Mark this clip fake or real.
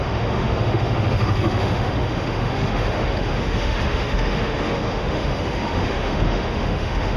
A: fake